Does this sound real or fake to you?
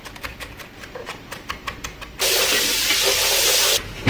real